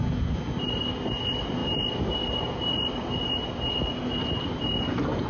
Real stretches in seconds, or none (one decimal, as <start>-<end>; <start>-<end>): 0.0-5.3